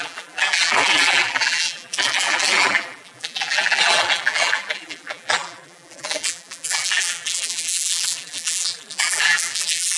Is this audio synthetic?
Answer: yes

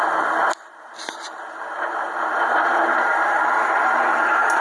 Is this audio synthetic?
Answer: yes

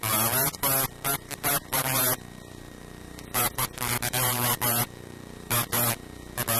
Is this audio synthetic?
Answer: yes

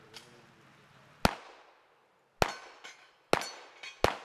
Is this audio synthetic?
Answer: no